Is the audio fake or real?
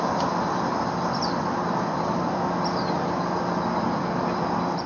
real